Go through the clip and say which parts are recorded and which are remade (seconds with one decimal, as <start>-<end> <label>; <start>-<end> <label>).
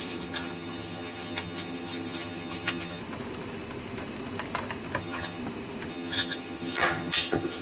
0.0-3.0 remade; 3.0-5.0 recorded; 5.0-5.4 remade; 5.4-5.9 recorded; 5.9-7.6 remade